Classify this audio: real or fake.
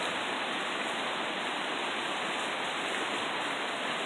real